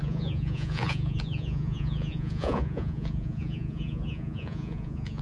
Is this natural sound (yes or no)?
no